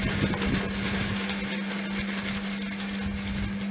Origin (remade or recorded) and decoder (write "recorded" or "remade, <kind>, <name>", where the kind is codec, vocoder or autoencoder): recorded